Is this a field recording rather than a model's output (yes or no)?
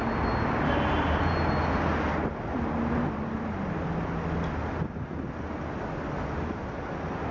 yes